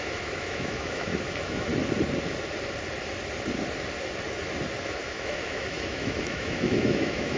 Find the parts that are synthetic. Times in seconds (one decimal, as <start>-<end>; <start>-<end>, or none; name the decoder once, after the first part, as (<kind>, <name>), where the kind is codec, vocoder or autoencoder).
0.0-1.7 (autoencoder, DAC-VAE); 4.8-7.4